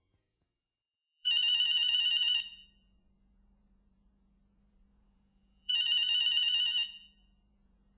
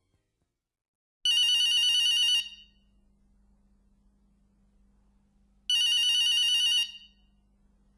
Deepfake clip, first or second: first